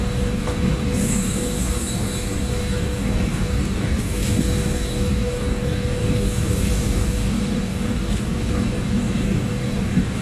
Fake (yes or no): yes